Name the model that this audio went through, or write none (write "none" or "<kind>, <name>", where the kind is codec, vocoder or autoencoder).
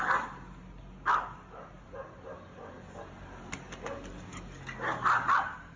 none